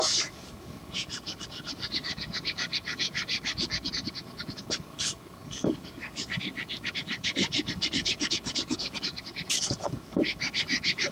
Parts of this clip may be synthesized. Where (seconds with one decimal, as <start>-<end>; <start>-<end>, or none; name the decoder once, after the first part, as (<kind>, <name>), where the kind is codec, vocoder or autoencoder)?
0.0-11.1 (codec, DAC)